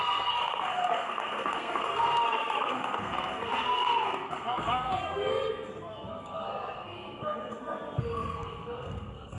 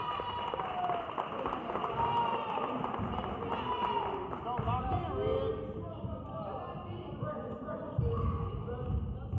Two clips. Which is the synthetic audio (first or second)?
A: first